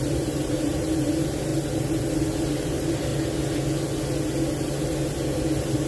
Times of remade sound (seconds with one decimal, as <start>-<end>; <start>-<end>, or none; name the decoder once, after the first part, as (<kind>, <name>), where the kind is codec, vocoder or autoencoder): 0.0-1.5 (vocoder, BigVGAN v2); 2.1-3.1; 4.5-5.9